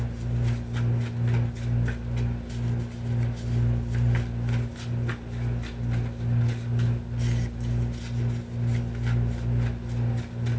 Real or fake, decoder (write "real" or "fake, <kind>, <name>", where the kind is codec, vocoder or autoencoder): real